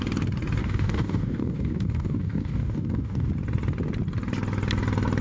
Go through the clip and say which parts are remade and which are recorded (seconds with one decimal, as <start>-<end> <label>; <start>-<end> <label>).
0.0-0.6 recorded; 0.6-3.3 remade; 3.3-5.2 recorded